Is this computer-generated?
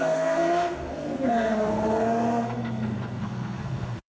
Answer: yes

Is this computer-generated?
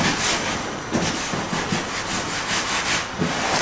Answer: no